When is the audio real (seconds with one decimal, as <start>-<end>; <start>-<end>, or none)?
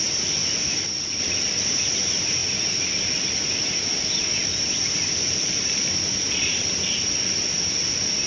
0.0-0.4; 1.2-4.4; 6.7-8.3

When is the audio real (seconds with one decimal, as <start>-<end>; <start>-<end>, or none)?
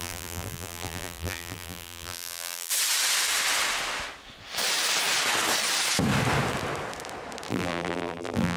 2.7-7.5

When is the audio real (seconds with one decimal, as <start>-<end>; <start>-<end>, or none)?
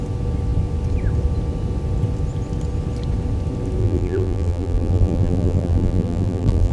0.0-3.8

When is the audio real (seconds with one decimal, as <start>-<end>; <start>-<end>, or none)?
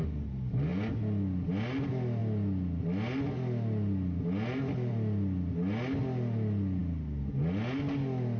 0.0-8.4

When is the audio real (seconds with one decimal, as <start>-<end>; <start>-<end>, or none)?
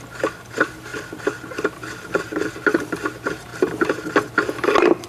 0.0-0.9; 1.8-3.5; 4.1-5.1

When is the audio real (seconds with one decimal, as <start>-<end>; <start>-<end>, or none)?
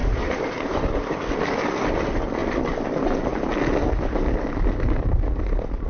1.2-5.9